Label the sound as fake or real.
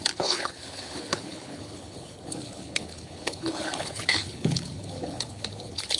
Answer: fake